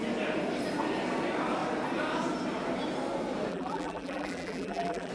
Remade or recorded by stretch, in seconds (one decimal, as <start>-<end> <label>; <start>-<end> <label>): 0.0-3.5 recorded; 3.5-5.1 remade